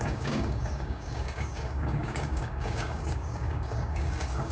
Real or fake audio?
fake